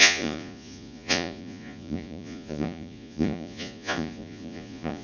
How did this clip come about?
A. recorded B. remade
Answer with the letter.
B